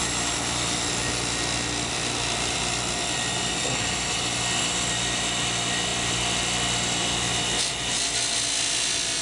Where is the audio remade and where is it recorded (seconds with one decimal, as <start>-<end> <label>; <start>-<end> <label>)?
0.0-9.2 recorded